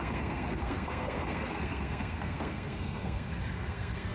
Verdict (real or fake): fake